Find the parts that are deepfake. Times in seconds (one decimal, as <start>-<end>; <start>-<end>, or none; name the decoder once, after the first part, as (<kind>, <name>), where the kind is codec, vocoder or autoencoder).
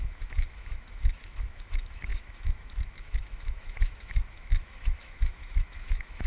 0.0-6.3 (autoencoder, DAC-VAE)